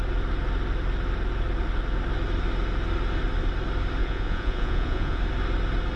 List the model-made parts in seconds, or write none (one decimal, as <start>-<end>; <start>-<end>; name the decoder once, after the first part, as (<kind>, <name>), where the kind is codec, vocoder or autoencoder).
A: 4.0-5.2 (vocoder, Vocos)